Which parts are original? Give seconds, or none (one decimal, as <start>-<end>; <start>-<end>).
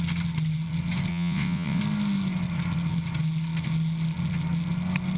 0.0-1.1; 1.8-5.2